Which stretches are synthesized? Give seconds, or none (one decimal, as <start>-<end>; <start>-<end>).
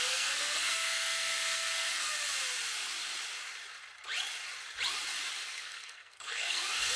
0.0-2.1; 5.5-7.0